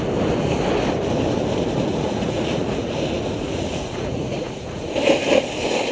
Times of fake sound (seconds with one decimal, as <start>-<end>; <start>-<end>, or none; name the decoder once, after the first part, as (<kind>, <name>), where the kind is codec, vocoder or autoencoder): 1.9-4.9 (vocoder, Vocos)

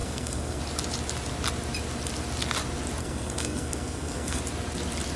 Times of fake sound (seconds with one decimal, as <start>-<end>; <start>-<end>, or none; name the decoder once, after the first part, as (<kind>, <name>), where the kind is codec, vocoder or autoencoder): 0.0-0.6 (codec, SNAC); 3.0-4.4